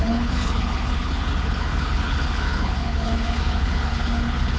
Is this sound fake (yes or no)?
yes